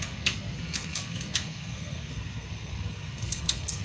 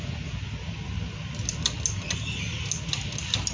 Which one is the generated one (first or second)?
first